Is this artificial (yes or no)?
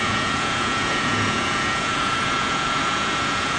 yes